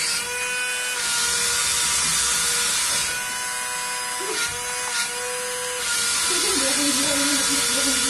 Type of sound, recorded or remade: recorded